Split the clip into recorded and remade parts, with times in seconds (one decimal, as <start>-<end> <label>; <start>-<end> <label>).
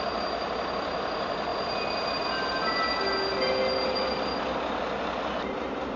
0.0-6.0 recorded